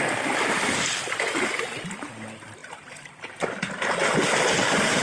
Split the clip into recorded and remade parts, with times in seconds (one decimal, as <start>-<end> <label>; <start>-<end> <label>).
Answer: 0.0-2.6 recorded; 2.6-3.6 remade; 3.6-5.0 recorded